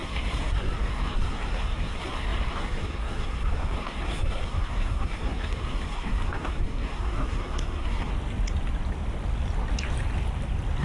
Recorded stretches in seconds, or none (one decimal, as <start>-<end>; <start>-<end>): 8.1-10.8